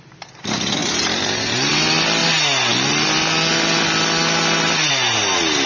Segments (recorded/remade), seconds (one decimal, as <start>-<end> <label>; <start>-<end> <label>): 0.0-0.8 recorded; 0.8-1.7 remade; 1.7-5.7 recorded